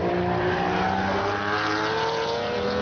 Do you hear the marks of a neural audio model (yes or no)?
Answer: no